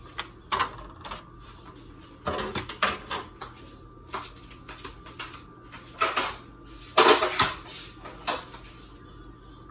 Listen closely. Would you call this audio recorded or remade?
recorded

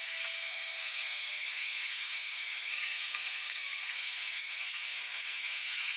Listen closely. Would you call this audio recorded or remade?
remade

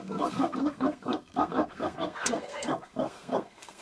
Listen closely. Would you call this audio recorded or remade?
remade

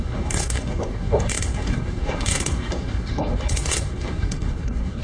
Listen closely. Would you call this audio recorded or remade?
remade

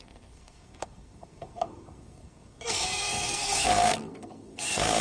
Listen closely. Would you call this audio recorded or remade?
remade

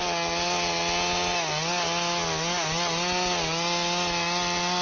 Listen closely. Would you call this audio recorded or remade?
recorded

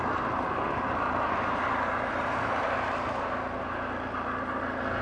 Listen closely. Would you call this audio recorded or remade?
recorded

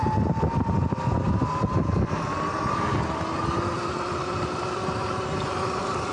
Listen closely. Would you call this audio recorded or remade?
recorded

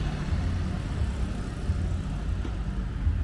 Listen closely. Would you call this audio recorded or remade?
recorded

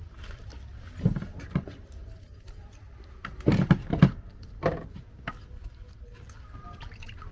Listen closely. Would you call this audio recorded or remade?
recorded